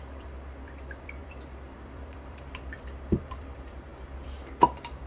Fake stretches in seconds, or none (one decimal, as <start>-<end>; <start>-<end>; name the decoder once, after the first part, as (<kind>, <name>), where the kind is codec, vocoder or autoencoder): 0.0-5.1 (vocoder, BigVGAN v2)